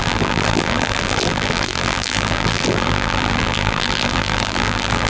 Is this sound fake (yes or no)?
yes